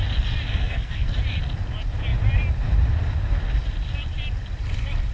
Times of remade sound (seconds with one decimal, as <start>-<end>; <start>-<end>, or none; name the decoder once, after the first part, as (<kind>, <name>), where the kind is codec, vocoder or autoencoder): 0.5-1.2 (codec, SNAC)